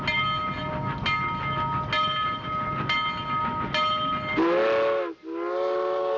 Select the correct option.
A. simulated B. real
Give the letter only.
B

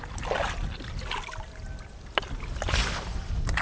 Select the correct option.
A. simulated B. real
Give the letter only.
B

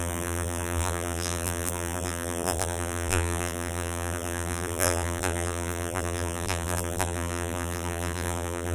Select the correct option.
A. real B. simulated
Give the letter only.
B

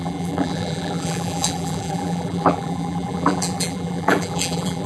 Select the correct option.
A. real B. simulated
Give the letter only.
B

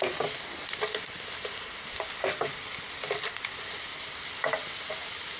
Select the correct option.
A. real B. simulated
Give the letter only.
B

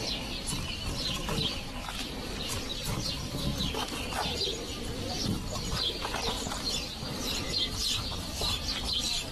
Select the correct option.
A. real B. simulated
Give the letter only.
B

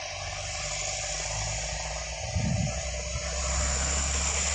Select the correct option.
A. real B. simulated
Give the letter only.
A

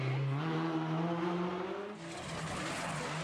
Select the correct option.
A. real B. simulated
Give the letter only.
A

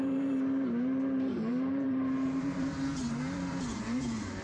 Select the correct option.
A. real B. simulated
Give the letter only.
B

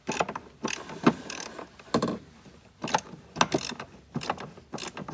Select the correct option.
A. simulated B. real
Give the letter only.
B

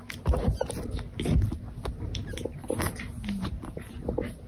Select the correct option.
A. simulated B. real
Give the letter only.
B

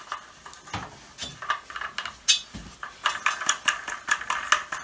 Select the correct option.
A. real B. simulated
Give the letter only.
A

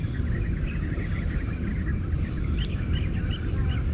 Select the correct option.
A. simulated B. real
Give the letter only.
B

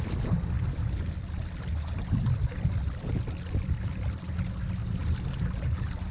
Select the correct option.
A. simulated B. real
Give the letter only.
B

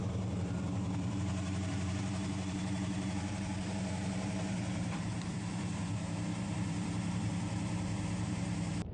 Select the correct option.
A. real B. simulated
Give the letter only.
B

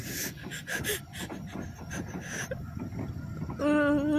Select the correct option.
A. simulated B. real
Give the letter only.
B